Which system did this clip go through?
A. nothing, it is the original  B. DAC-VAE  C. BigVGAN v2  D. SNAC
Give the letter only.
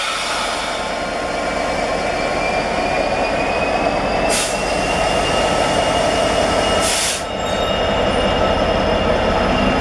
A